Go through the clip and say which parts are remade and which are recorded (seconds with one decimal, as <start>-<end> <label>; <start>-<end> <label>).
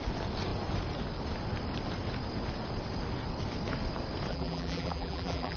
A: 0.0-4.3 recorded; 4.3-5.6 remade